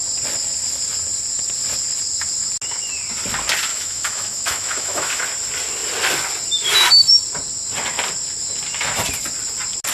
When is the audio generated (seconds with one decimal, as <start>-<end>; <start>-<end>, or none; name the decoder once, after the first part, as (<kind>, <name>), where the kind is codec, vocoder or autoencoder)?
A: 3.7-5.2 (autoencoder, DAC-VAE)